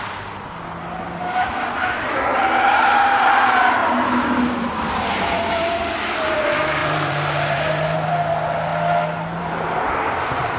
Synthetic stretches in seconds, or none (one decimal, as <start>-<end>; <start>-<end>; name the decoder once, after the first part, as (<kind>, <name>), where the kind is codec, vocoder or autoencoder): 2.3-3.2 (vocoder, BigVGAN v2); 3.8-5.5; 6.8-8.1

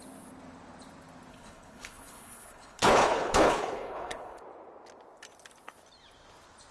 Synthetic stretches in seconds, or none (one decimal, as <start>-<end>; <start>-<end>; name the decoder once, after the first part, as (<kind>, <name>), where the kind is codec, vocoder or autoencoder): 1.3-4.4 (codec, HILCodec)

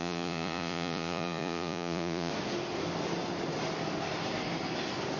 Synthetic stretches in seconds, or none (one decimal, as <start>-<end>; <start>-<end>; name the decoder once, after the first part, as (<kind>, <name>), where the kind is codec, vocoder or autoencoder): 0.0-2.3 (vocoder, Vocos)

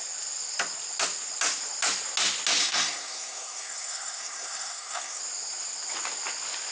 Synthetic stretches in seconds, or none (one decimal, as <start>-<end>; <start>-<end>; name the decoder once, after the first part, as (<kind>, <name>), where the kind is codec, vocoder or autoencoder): 2.6-5.2 (codec, SNAC)

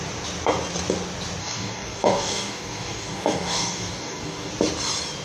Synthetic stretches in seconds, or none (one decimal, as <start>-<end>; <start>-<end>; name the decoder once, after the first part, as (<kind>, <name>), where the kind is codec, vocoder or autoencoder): 1.4-4.5 (codec, DAC)

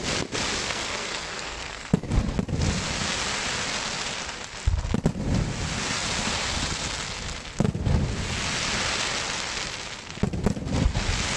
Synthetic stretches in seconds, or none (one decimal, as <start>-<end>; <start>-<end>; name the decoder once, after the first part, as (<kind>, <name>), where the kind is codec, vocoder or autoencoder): 0.6-2.1 (codec, SNAC)